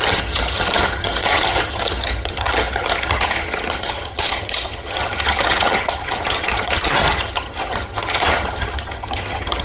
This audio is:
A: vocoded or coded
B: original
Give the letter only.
A